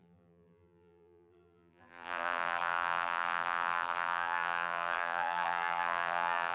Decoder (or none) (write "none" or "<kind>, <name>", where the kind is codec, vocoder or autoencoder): vocoder, BigVGAN v2